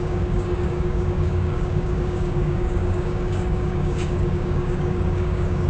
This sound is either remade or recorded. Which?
remade